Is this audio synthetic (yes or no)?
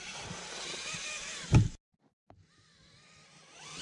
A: no